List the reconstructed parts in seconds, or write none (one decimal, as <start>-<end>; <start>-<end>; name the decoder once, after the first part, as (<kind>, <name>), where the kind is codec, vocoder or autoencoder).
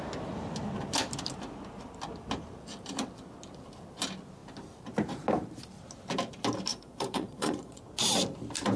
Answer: 6.7-7.8 (vocoder, Vocos)